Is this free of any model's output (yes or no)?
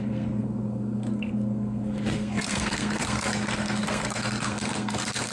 no